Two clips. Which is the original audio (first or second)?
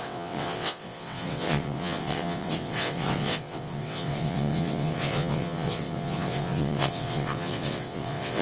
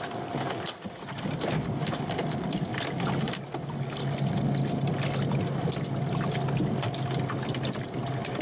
second